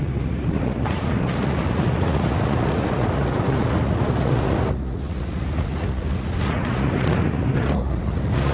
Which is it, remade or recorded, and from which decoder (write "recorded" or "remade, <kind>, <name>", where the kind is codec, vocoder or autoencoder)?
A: remade, vocoder, Vocos